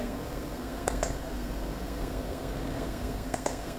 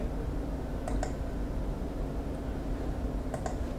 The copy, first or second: first